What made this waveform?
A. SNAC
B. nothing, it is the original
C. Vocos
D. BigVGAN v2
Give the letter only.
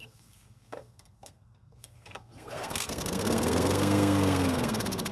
A